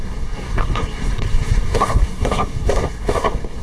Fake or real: fake